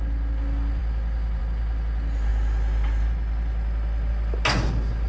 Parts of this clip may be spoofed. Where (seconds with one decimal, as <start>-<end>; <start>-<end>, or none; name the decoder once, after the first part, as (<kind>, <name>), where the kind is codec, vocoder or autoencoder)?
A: none

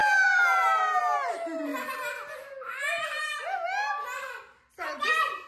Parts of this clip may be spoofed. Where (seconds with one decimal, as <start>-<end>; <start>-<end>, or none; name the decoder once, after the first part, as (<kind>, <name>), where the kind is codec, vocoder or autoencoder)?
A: 0.0-1.0 (vocoder, BigVGAN v2)